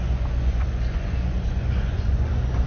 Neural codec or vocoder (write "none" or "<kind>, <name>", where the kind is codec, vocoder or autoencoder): vocoder, Vocos